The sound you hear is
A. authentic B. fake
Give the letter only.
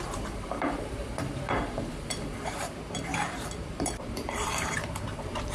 B